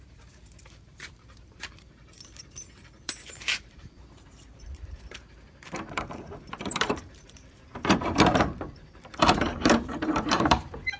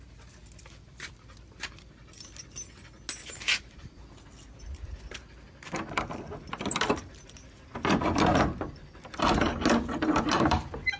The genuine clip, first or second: second